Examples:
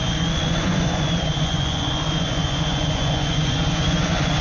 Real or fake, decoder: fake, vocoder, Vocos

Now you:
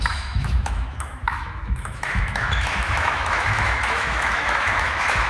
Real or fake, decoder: fake, autoencoder, DAC-VAE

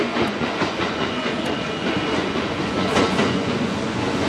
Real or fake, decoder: fake, vocoder, Vocos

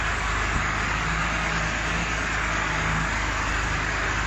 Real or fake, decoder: fake, codec, DAC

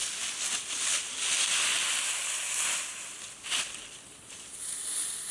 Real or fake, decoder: real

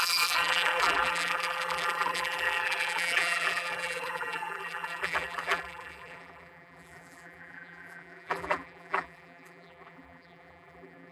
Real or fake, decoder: fake, vocoder, BigVGAN v2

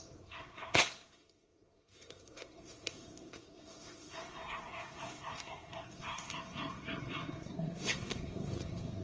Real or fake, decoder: fake, codec, SNAC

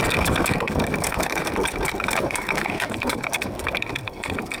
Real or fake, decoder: fake, codec, SNAC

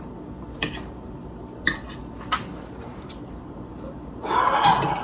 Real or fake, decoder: real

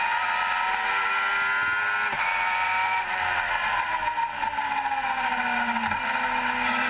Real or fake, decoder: real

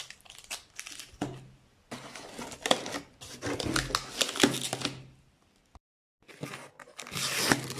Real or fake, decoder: real